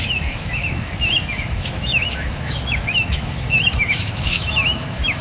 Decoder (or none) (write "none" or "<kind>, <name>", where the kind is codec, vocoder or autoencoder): autoencoder, DAC-VAE